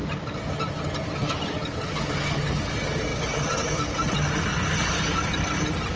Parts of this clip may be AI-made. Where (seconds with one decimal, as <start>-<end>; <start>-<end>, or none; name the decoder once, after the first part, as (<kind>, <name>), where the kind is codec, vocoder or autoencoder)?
none